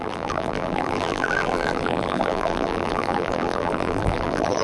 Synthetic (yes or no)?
yes